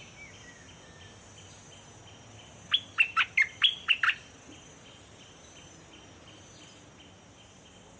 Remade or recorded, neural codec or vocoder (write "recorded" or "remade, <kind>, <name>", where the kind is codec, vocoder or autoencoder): recorded